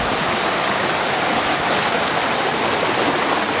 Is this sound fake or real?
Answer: real